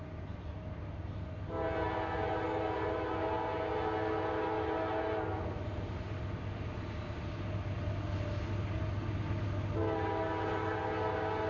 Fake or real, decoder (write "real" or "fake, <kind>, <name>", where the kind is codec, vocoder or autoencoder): real